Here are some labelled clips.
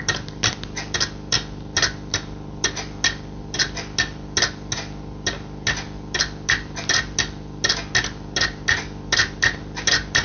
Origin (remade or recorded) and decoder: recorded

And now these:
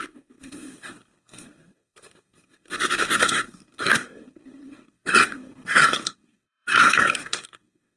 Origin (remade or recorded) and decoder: remade, codec, SNAC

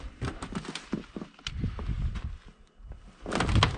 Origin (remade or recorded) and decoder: recorded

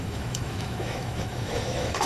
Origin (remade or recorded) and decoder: remade, autoencoder, DAC-VAE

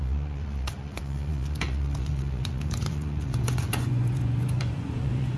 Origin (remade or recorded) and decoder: remade, vocoder, Vocos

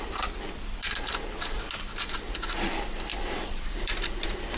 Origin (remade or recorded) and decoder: remade, vocoder, BigVGAN v2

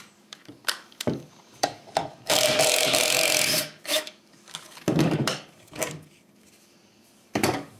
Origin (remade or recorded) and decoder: remade, codec, DAC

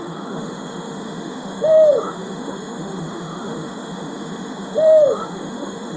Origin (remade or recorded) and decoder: remade, autoencoder, DAC-VAE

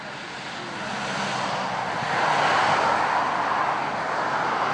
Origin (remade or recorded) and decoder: recorded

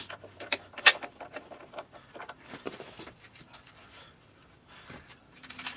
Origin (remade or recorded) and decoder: remade, vocoder, BigVGAN v2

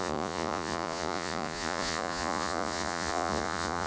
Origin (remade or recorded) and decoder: remade, vocoder, Vocos